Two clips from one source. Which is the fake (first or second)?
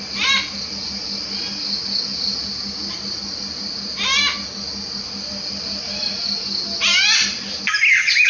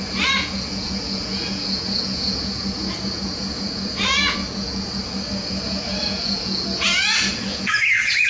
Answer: second